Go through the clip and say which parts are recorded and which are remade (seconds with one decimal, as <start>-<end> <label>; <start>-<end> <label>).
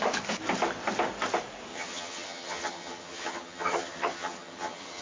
0.0-1.7 recorded; 1.7-5.0 remade